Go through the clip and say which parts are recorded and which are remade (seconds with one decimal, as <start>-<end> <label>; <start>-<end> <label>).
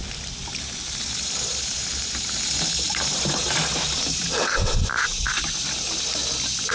0.0-6.7 recorded